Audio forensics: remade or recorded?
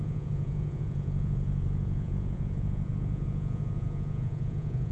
remade